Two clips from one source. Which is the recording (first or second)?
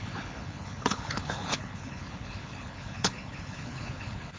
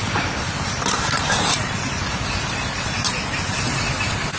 second